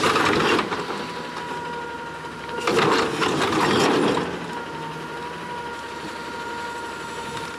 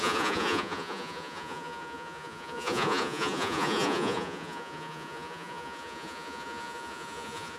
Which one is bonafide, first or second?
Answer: first